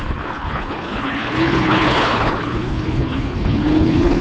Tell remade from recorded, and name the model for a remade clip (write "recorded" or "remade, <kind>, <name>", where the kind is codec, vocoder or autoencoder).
remade, codec, HILCodec